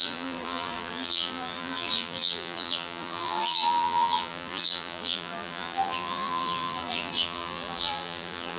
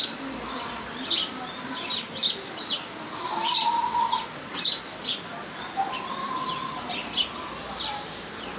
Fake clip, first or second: first